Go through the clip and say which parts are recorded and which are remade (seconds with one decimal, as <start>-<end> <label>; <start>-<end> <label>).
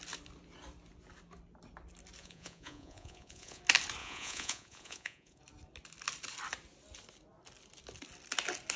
0.0-2.2 recorded; 2.2-3.6 remade; 3.6-4.0 recorded; 4.0-5.4 remade; 5.4-8.8 recorded